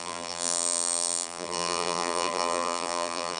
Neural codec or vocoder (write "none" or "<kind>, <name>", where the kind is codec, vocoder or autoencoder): vocoder, BigVGAN v2